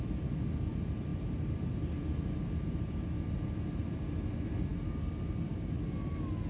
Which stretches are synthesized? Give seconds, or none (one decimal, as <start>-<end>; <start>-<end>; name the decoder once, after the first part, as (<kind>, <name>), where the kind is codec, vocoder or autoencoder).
1.1-2.0 (vocoder, BigVGAN v2)